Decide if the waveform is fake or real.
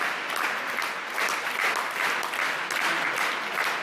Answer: real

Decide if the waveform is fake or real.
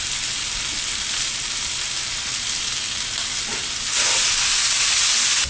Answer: real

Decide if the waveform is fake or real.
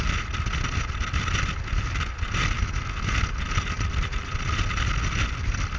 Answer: real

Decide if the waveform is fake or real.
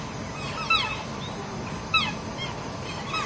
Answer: real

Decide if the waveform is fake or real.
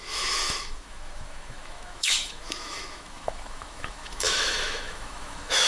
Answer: fake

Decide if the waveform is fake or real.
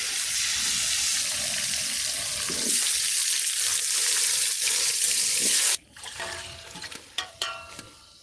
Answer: fake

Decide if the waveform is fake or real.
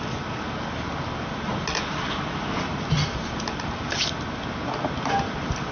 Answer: real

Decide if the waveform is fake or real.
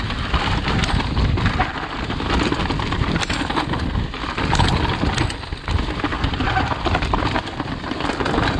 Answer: real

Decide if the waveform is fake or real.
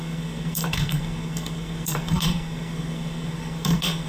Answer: fake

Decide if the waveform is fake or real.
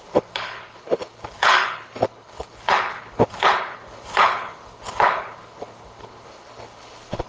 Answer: fake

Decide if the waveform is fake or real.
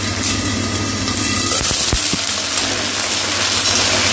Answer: real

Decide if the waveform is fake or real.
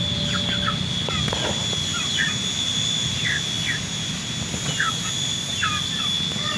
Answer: real